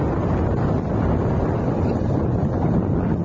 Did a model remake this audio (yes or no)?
no